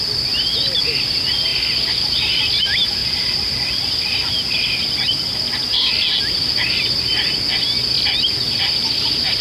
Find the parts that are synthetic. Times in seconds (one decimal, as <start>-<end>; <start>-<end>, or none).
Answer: 3.0-5.9